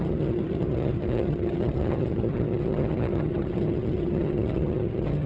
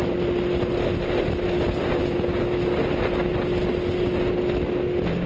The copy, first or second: first